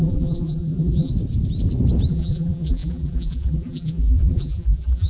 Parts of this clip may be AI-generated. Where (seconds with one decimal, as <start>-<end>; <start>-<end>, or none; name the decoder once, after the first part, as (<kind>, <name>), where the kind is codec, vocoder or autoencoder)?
0.0-1.1 (vocoder, BigVGAN v2); 2.1-5.1